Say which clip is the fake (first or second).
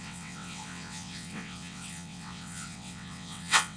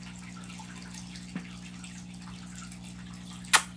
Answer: first